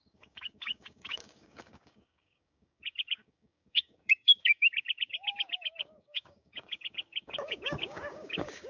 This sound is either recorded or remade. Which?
remade